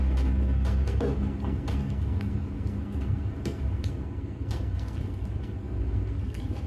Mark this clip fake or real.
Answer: fake